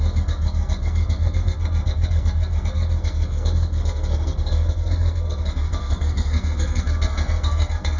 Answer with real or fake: fake